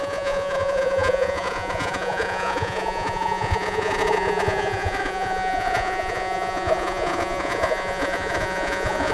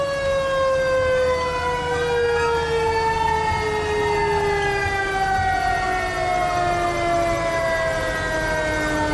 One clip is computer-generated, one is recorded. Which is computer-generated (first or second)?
first